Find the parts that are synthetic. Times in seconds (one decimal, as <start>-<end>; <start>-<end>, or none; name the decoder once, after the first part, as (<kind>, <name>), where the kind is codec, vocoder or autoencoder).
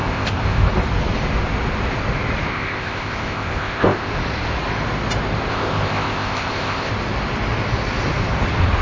0.0-0.7 (codec, ZipCodec); 2.5-4.1; 5.5-6.9